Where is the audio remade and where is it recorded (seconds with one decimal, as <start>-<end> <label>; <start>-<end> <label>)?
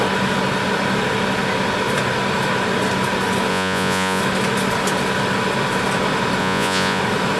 0.0-3.5 recorded; 3.5-4.2 remade; 4.2-6.4 recorded; 6.4-7.0 remade; 7.0-7.4 recorded